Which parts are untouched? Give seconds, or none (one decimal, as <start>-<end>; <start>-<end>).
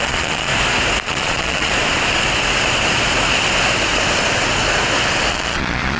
0.5-1.0; 1.7-5.3